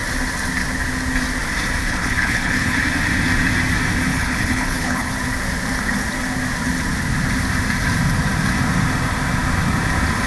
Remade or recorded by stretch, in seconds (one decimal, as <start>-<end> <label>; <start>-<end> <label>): 0.0-1.8 recorded; 1.8-2.8 remade; 2.8-4.1 recorded; 4.1-5.1 remade; 5.1-10.3 recorded